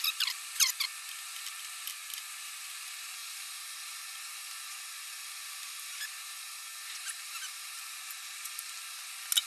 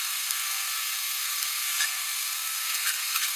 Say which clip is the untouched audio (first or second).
first